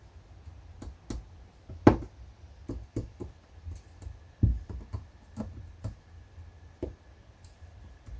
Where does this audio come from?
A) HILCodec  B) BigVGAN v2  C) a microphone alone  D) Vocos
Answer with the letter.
C